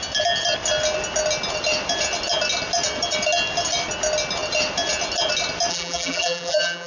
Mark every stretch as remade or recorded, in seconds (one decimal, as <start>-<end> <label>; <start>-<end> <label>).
0.0-5.7 recorded; 5.7-6.9 remade

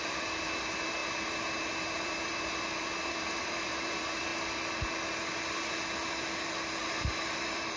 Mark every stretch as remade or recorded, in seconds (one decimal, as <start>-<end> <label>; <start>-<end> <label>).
0.0-4.3 remade; 4.3-6.7 recorded; 6.7-7.8 remade

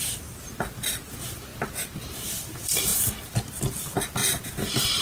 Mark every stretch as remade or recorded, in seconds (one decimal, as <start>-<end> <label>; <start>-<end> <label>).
0.0-4.2 recorded; 4.2-5.0 remade